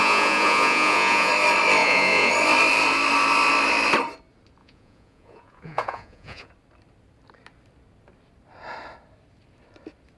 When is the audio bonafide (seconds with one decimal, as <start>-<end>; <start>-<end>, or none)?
1.3-1.8; 2.3-4.6; 6.5-10.2